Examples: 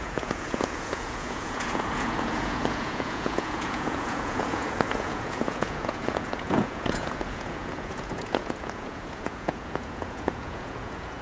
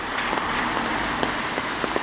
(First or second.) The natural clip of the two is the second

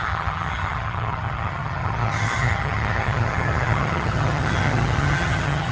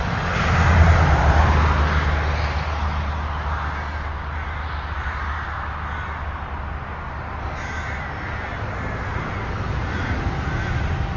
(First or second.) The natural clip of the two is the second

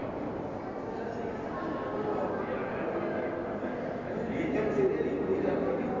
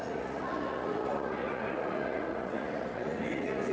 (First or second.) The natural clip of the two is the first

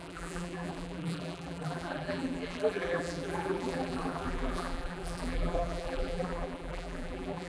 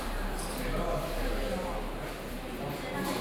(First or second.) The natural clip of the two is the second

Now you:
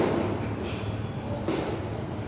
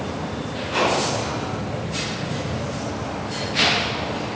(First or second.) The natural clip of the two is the second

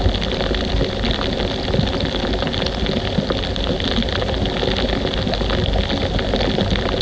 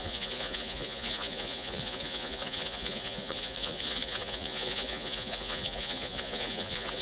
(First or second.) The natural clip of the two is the first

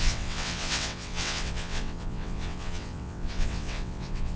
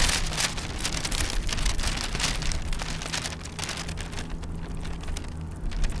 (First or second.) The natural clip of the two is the second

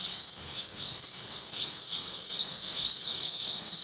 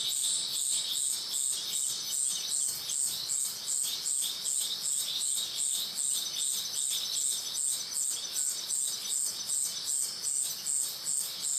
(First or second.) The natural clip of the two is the second